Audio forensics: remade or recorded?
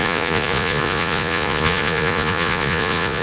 remade